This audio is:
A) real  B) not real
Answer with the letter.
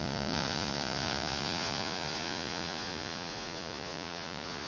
B